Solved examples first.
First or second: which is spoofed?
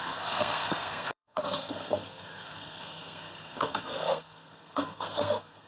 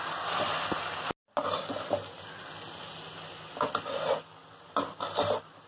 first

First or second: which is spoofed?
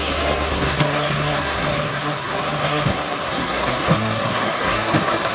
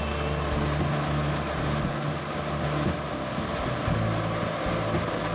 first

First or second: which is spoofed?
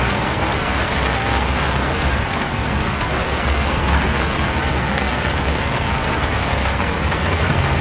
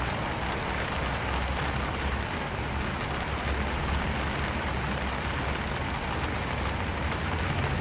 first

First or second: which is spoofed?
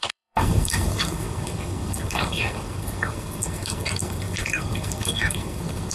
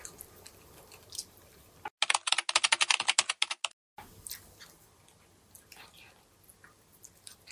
first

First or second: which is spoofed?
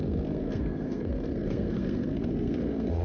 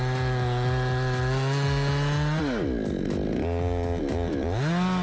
first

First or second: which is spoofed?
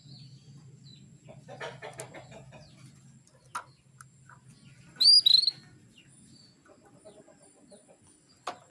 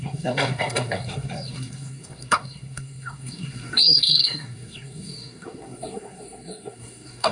second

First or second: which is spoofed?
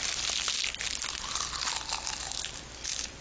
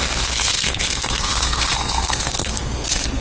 second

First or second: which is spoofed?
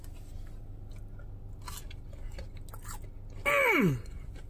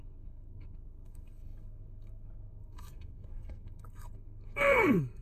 second